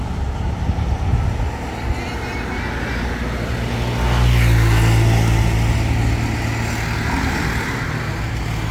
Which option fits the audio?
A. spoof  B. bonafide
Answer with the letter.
B